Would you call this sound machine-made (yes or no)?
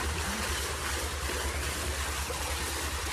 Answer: no